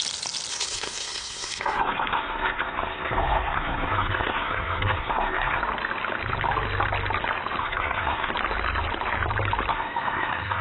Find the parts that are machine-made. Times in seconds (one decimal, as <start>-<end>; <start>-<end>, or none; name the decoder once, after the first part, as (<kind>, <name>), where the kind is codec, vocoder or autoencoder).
0.5-5.6 (codec, SNAC); 7.6-8.3; 9.7-10.6